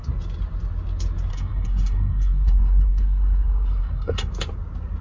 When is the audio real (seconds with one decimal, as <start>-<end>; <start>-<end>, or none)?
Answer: 0.0-1.3; 4.3-5.0